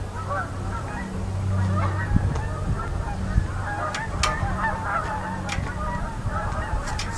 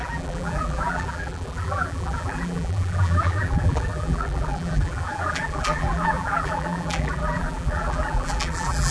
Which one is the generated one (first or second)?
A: second